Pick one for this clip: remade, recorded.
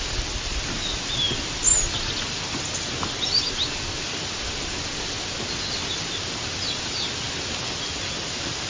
recorded